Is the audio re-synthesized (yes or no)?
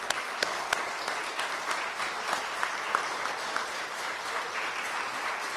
no